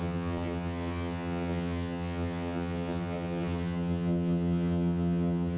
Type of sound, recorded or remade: remade